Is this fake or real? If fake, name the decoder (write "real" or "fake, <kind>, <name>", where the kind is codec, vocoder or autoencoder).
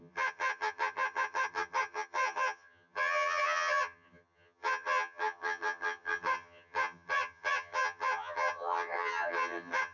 fake, vocoder, HiFi-GAN